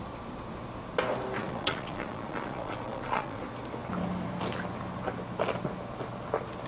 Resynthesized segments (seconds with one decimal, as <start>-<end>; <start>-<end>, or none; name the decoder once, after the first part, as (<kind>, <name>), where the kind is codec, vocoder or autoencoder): 1.4-3.4 (vocoder, Vocos)

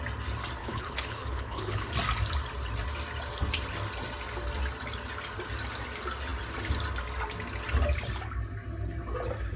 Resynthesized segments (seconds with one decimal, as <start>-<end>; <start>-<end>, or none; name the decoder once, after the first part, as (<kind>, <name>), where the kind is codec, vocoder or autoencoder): 0.6-1.9 (codec, HILCodec)

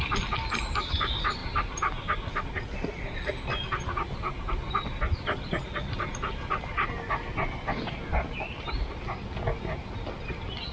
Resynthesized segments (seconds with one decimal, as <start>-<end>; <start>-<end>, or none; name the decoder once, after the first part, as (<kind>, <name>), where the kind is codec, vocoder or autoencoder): none

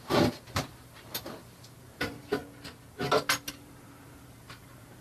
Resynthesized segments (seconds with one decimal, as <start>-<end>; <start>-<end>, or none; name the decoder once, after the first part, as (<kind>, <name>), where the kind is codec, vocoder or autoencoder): 0.0-2.4 (vocoder, BigVGAN v2); 3.5-5.0